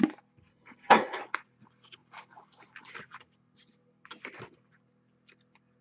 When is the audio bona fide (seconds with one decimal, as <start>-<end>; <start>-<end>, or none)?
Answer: 0.0-0.5; 1.2-5.8